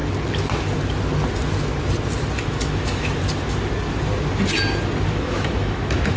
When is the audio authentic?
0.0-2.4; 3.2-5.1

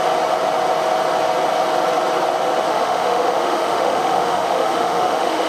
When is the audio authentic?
0.0-2.7